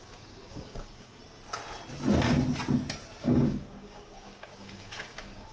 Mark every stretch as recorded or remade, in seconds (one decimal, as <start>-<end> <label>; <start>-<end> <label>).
0.0-1.2 remade; 1.2-3.2 recorded; 3.2-5.5 remade